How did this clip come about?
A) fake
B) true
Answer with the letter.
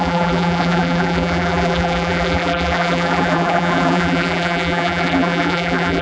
A